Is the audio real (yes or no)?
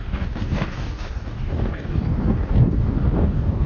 no